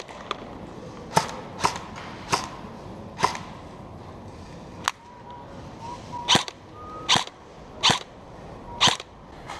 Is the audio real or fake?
real